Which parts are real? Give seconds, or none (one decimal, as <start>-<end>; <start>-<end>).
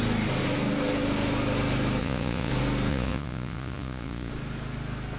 0.0-2.0; 2.5-2.9; 4.3-5.2